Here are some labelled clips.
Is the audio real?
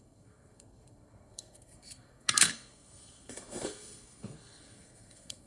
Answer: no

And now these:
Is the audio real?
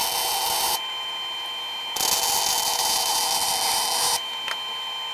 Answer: yes